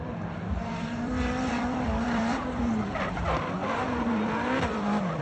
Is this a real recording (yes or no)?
no